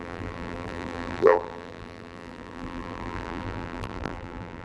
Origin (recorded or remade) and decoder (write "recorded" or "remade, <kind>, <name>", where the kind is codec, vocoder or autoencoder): remade, vocoder, BigVGAN v2